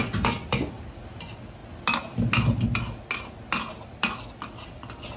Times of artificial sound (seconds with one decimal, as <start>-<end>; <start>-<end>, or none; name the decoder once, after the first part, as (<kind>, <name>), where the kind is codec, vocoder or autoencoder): none